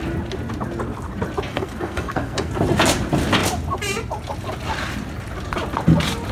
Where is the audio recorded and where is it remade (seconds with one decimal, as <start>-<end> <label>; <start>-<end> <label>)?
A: 0.0-1.5 recorded; 1.5-2.5 remade; 2.5-6.3 recorded